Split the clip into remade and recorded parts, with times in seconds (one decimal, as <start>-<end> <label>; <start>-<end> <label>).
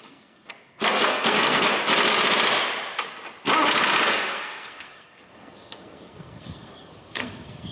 0.0-1.7 remade; 1.7-4.1 recorded; 4.1-7.7 remade